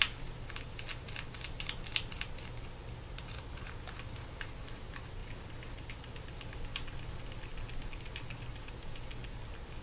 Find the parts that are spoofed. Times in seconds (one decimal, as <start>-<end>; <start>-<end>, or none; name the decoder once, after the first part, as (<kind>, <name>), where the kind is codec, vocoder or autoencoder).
none